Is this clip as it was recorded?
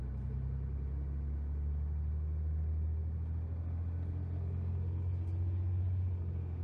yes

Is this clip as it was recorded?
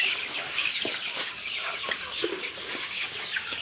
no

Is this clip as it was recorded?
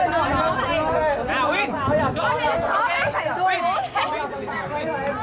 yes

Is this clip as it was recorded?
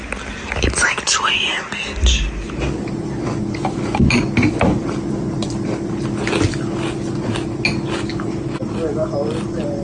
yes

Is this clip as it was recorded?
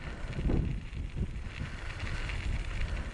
yes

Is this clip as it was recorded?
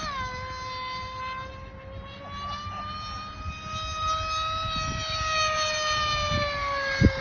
yes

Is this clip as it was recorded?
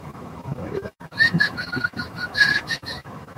no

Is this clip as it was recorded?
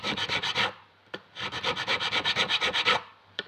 no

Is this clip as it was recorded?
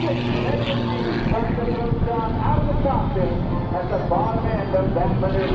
yes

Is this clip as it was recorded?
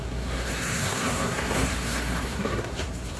no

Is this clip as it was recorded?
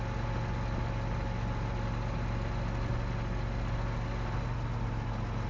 yes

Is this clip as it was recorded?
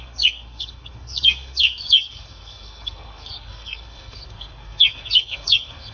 no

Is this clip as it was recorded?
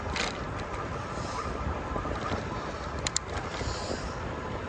no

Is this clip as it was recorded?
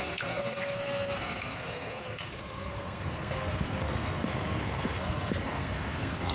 no